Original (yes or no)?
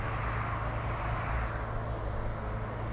yes